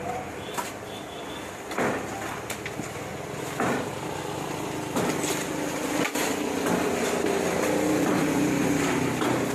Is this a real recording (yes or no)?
yes